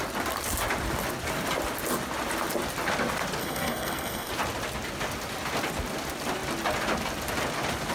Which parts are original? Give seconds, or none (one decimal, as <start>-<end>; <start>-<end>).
0.0-3.4; 4.3-7.9